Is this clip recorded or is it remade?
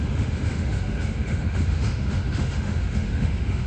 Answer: remade